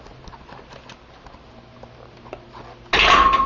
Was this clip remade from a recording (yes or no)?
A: no